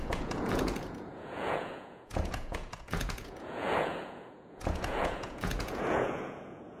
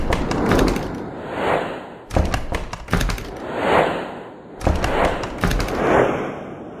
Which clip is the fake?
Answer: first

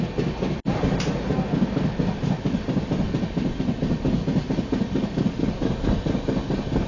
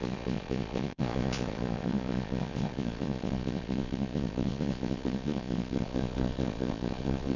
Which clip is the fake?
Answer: second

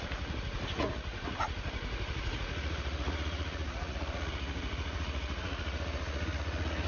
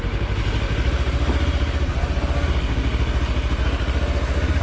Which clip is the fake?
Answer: first